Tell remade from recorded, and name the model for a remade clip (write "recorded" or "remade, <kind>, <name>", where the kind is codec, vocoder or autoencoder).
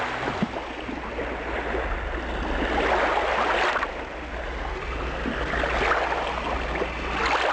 recorded